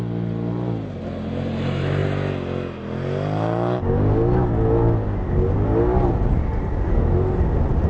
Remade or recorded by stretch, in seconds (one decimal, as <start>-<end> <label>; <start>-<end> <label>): 0.0-7.9 recorded